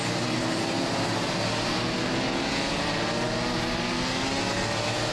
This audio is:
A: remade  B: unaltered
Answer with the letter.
B